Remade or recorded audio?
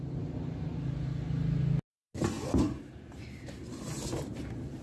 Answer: recorded